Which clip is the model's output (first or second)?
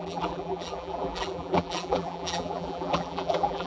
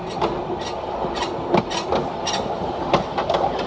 first